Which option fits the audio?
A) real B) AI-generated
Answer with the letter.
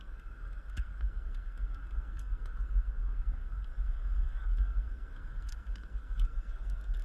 B